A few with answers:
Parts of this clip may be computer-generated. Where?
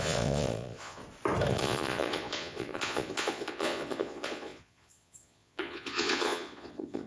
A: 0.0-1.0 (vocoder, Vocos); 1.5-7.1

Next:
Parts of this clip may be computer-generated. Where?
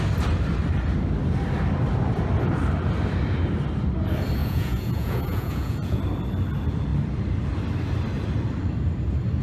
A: 4.4-6.0 (vocoder, Vocos)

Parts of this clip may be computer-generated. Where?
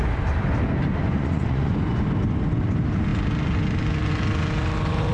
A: 1.0-2.0 (vocoder, Vocos)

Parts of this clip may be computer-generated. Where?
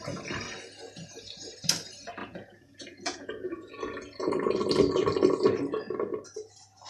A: 2.2-4.3 (vocoder, Vocos)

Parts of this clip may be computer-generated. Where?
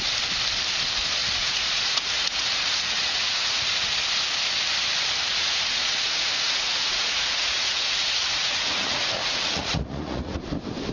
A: 1.2-3.7 (vocoder, Vocos); 5.3-10.4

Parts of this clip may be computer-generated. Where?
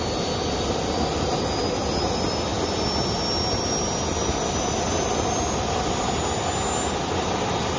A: none